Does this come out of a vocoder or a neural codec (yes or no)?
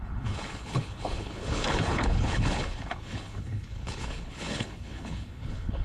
yes